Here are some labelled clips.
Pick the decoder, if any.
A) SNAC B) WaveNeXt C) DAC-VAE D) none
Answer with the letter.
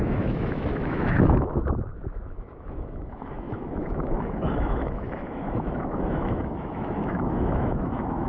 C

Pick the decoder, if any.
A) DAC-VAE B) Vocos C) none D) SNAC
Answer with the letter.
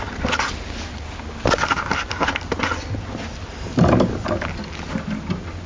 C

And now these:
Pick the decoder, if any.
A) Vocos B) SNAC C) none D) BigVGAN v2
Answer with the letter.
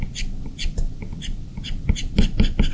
C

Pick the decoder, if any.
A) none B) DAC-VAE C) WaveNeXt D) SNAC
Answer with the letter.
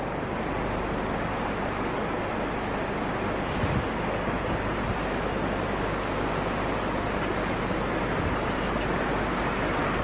A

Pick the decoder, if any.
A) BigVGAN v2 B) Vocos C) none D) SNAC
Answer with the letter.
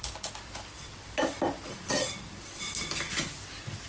C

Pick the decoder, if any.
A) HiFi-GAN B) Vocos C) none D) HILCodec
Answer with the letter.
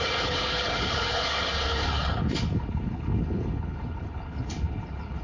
D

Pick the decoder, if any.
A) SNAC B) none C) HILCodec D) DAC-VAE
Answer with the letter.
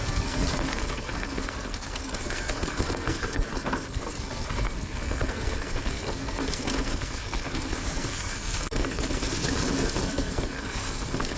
A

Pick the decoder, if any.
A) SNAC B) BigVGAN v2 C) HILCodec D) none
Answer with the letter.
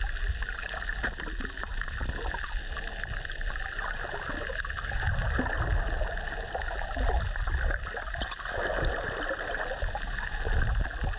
D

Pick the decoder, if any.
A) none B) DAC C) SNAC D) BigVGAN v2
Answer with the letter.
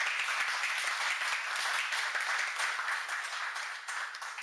A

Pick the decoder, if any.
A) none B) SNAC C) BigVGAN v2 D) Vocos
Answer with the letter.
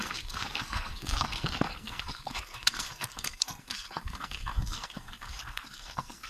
B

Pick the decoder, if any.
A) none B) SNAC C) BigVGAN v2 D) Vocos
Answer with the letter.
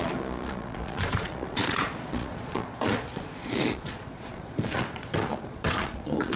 D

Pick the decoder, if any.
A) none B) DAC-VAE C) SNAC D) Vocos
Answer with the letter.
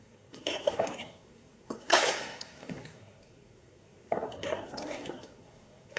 C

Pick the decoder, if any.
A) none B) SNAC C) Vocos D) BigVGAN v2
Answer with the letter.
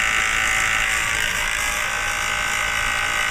A